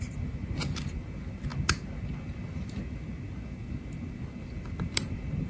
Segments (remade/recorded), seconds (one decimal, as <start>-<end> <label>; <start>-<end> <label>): 0.0-5.5 recorded